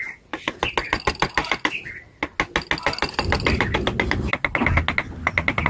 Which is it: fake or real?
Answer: real